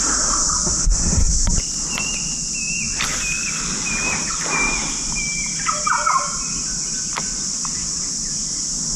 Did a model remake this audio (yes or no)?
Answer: no